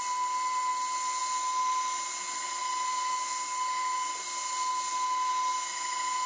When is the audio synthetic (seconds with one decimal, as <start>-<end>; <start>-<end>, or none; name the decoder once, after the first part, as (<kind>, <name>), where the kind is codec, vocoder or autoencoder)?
none